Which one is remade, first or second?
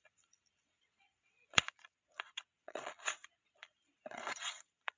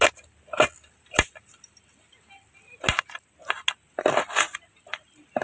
first